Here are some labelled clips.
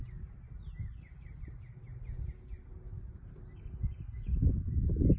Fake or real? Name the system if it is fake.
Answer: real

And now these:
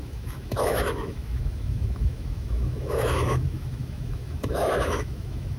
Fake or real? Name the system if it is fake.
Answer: fake, autoencoder, DAC-VAE